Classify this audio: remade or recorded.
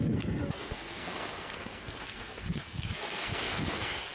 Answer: remade